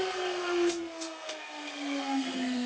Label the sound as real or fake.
fake